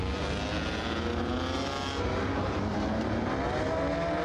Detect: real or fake real